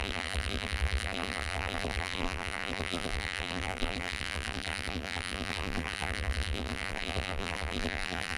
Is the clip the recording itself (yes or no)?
no